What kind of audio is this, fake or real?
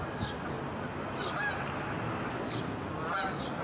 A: real